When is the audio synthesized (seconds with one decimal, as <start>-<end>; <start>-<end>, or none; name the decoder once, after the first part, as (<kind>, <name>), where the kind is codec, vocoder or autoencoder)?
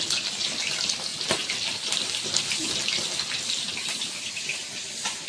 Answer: 1.1-4.3 (vocoder, BigVGAN v2)